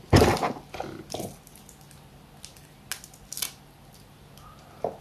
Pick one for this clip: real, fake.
real